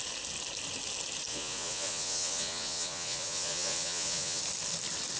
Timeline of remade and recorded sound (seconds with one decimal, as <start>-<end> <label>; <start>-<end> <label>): 0.0-1.3 recorded; 1.3-4.4 remade; 4.4-5.2 recorded